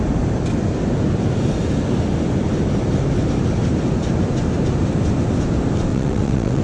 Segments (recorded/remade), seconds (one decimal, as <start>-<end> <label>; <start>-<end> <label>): 0.0-5.9 recorded; 5.9-6.6 remade